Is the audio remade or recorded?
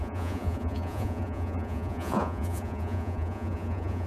remade